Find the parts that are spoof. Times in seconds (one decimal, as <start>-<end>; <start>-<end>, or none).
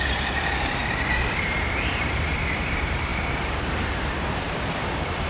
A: 0.0-0.8; 1.4-5.3